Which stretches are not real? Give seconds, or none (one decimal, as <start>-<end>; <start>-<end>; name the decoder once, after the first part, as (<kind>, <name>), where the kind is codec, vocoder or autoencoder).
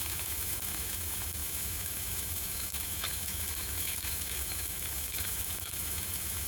0.0-6.5 (autoencoder, DAC-VAE)